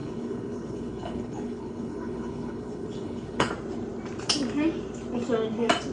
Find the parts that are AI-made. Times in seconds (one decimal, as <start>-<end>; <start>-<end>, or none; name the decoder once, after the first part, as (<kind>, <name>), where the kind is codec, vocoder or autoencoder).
0.0-3.5 (codec, HILCodec)

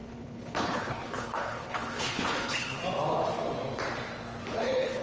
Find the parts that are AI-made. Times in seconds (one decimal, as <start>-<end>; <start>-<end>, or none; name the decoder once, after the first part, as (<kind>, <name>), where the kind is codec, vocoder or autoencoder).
0.0-2.8 (codec, HILCodec); 4.5-5.0

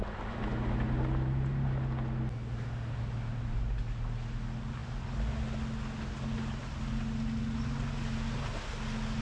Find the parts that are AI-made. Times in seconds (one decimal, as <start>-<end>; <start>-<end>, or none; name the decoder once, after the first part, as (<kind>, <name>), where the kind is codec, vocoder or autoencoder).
none

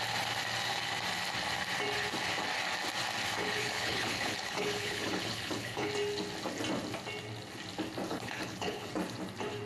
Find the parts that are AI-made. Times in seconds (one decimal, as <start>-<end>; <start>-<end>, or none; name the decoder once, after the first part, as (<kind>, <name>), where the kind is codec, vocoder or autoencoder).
3.4-5.9 (codec, HILCodec); 8.1-8.9

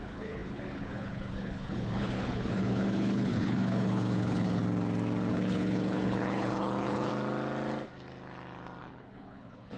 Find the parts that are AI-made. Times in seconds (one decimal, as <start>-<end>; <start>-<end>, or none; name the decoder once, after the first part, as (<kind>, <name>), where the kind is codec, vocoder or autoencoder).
0.0-4.6 (codec, HILCodec); 5.3-7.1; 8.8-9.8